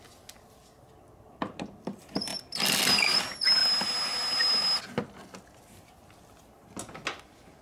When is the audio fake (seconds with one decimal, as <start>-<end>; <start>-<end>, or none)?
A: none